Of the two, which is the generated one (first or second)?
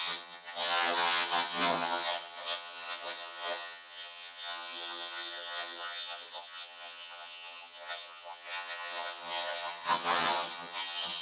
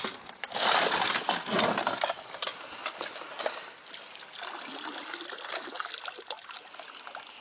first